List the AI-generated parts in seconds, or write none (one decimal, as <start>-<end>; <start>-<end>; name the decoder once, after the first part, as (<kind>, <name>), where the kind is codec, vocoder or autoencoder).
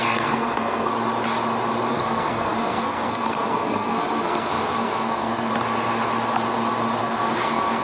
0.0-0.9 (codec, SNAC); 1.9-5.5; 7.0-7.8